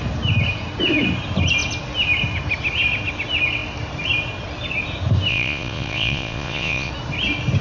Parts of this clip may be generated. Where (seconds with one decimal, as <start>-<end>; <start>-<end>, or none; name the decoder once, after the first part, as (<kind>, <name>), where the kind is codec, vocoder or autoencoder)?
5.3-6.9 (vocoder, Vocos)